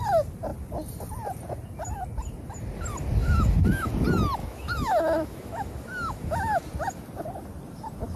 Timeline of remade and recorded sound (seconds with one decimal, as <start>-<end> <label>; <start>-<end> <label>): 0.0-3.2 recorded; 3.2-3.9 remade; 3.9-4.4 recorded; 4.4-6.6 remade; 6.6-8.2 recorded